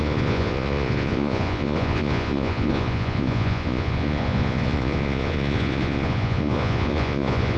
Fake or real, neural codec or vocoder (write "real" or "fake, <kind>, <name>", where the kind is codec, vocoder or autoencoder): fake, vocoder, Vocos